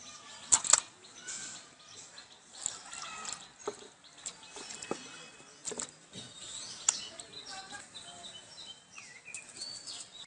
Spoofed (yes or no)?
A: no